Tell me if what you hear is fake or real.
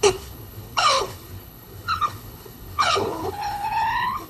fake